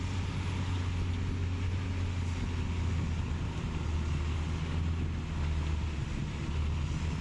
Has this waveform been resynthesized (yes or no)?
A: no